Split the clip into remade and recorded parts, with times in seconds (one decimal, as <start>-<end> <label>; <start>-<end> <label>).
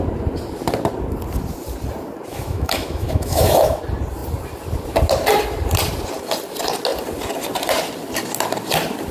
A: 0.0-2.3 recorded; 2.3-3.8 remade; 3.8-9.1 recorded